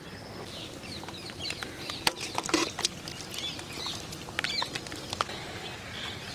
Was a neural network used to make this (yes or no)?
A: no